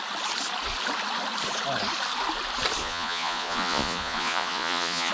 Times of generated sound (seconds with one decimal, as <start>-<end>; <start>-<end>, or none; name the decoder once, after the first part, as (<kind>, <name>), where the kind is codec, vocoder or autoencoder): 2.8-5.1 (vocoder, Vocos)